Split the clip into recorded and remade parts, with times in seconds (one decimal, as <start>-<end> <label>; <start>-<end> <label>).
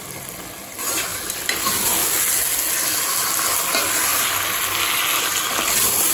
0.0-6.1 recorded